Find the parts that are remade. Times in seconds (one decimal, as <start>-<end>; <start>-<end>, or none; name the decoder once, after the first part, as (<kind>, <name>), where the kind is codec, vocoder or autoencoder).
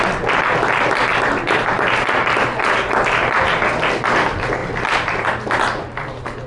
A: 1.1-2.6 (vocoder, BigVGAN v2); 4.6-5.6